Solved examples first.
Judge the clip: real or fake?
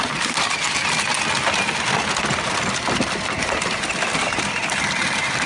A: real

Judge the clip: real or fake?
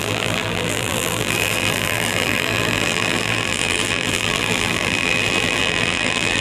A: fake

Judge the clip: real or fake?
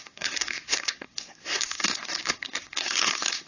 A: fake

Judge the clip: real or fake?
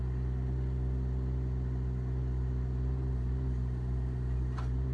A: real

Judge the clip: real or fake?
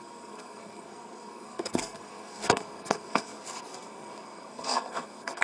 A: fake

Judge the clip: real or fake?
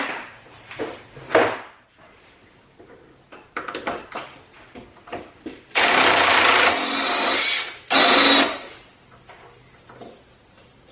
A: real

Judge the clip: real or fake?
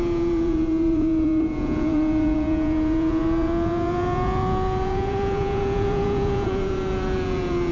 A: fake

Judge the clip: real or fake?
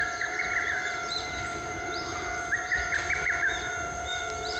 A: fake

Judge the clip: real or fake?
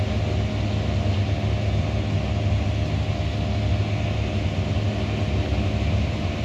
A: real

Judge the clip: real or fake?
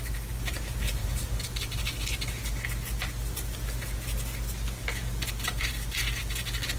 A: real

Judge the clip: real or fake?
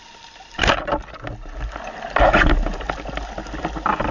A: real